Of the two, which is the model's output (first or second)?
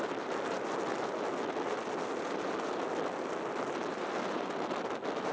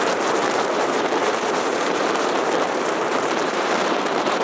second